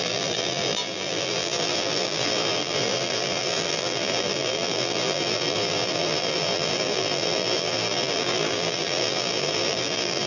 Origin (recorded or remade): remade